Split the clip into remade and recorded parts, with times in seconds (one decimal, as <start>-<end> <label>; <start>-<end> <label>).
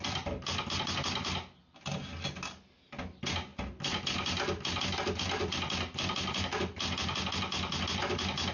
0.0-8.5 recorded